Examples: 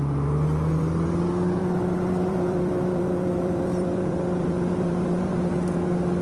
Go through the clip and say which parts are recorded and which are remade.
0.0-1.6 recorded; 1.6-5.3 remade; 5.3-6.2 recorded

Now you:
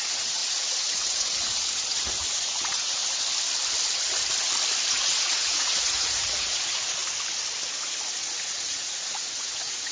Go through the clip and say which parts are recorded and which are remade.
0.0-3.0 remade; 3.0-4.9 recorded; 4.9-7.0 remade; 7.0-8.2 recorded; 8.2-9.9 remade

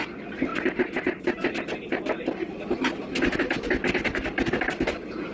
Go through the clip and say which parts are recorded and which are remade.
0.0-5.3 recorded

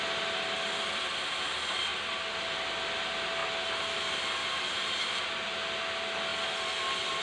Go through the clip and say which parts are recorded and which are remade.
0.0-7.2 recorded

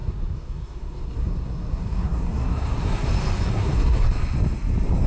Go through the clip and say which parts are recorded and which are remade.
0.0-3.1 remade; 3.1-3.5 recorded; 3.5-4.1 remade; 4.1-5.1 recorded